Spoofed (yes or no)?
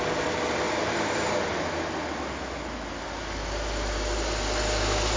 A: no